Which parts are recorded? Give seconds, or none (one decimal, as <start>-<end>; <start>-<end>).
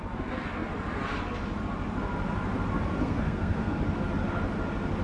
0.0-3.0; 3.7-5.0